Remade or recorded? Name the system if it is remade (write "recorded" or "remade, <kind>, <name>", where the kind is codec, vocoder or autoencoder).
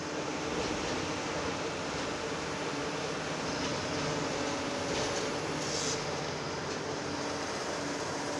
recorded